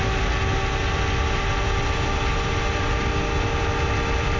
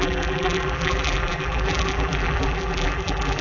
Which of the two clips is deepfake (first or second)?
second